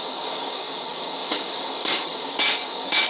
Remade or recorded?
remade